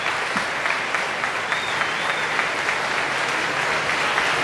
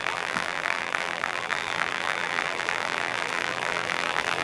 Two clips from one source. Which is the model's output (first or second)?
second